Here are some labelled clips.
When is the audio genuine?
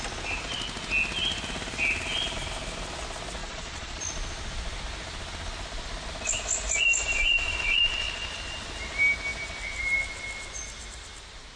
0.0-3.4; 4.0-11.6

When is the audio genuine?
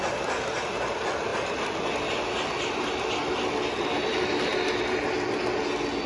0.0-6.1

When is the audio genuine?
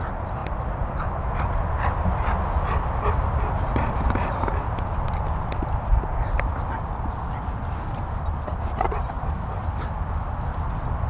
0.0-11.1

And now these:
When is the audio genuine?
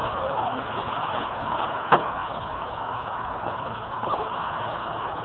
none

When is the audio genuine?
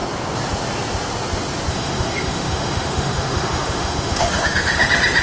0.0-1.7; 4.8-5.2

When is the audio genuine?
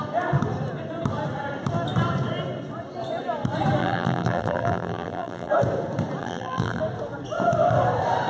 0.0-3.8; 5.5-6.2; 6.8-8.3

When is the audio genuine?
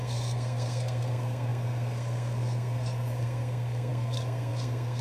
none